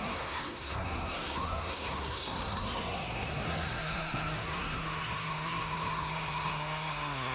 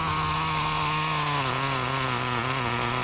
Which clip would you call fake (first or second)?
first